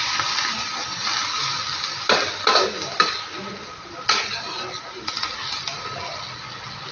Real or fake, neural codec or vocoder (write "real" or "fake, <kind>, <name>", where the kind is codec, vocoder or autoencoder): real